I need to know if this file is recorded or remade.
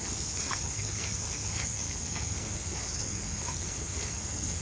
remade